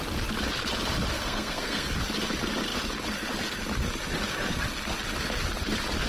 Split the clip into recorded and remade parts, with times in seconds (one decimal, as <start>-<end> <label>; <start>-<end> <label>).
0.0-1.1 recorded; 1.1-1.9 remade; 1.9-6.1 recorded

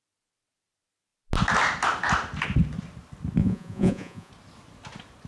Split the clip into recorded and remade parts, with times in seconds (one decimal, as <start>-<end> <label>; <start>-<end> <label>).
0.0-3.4 recorded; 3.4-4.3 remade; 4.3-5.3 recorded

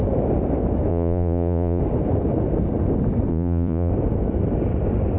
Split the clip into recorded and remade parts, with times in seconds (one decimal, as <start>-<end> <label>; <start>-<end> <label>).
0.0-0.9 recorded; 0.9-1.8 remade; 1.8-3.3 recorded; 3.3-3.9 remade; 3.9-5.2 recorded

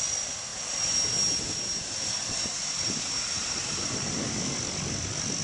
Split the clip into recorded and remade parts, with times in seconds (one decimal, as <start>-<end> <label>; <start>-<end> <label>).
0.0-3.4 recorded; 3.4-5.4 remade